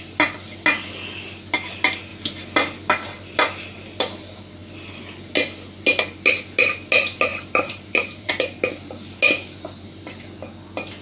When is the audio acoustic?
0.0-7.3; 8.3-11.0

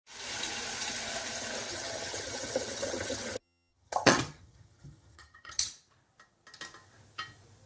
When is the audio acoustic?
0.0-1.7; 5.7-7.7